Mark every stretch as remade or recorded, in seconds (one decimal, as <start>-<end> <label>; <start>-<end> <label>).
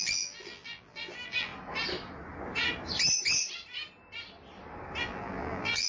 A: 0.0-1.5 remade; 1.5-5.0 recorded; 5.0-5.9 remade